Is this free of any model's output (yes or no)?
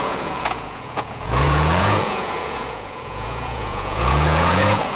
no